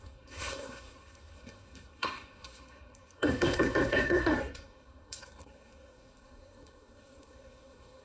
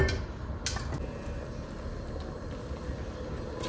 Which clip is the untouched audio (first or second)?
second